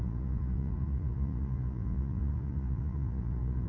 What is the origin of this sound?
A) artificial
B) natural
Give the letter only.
A